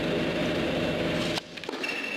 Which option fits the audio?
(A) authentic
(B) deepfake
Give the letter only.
A